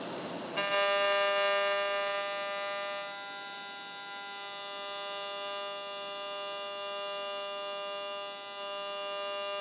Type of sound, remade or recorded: recorded